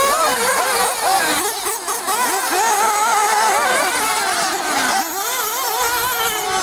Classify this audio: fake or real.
real